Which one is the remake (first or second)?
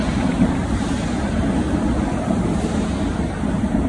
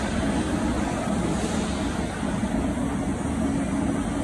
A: first